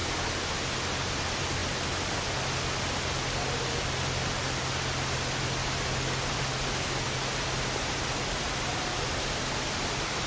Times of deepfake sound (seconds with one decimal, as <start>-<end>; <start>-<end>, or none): none